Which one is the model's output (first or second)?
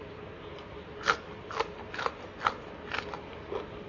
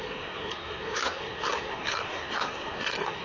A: second